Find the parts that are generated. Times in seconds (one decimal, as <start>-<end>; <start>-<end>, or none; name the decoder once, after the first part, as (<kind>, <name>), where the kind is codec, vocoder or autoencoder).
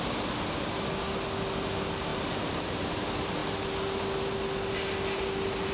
2.1-2.9 (vocoder, BigVGAN v2)